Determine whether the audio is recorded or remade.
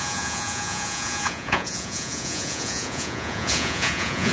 remade